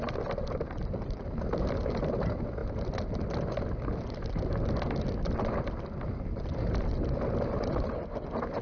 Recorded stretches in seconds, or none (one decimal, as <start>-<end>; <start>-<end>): 0.0-8.6